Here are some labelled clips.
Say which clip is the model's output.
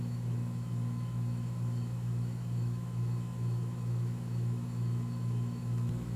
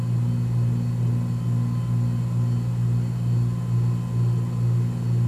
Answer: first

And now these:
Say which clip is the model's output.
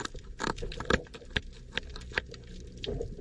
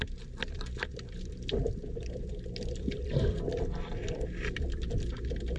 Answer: second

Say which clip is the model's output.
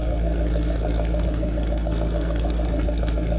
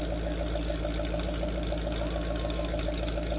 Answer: first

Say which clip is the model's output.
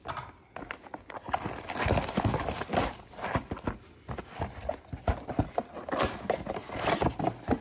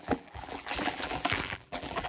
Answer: second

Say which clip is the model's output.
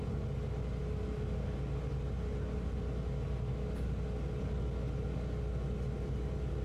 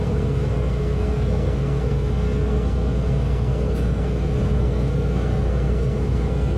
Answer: second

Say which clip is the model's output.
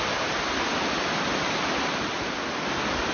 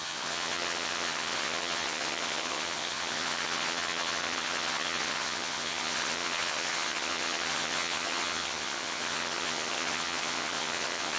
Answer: second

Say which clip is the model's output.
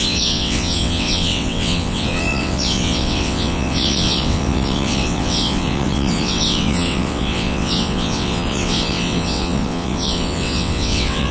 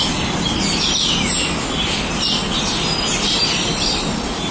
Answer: first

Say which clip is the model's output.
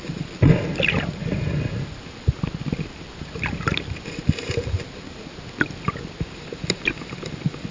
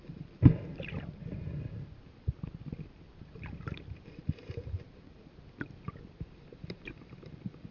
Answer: second